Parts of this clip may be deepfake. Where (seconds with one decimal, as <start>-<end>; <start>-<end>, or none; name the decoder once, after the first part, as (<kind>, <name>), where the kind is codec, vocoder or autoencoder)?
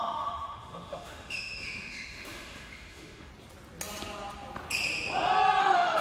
0.0-3.3 (autoencoder, DAC-VAE); 5.6-6.0